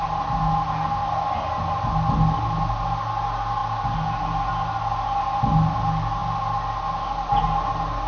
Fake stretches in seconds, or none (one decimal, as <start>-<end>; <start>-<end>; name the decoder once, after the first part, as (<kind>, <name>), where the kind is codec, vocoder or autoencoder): none